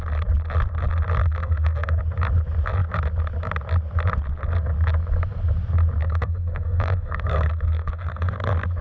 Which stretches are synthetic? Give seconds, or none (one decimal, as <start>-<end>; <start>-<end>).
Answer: 1.2-2.0; 6.0-8.3